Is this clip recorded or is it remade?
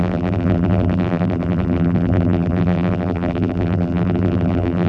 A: remade